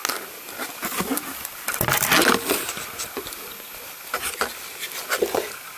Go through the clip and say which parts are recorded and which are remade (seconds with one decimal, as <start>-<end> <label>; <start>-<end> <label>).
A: 0.0-5.8 recorded